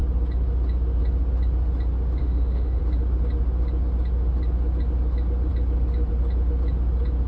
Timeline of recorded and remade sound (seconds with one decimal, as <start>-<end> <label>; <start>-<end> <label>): 0.0-2.2 recorded; 2.2-2.8 remade; 2.8-7.3 recorded